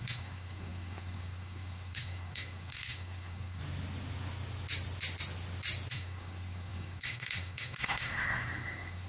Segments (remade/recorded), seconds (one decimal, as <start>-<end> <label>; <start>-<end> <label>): 0.0-3.6 remade; 3.6-5.9 recorded; 5.9-9.1 remade